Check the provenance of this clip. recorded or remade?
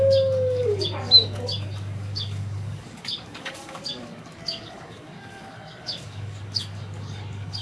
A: remade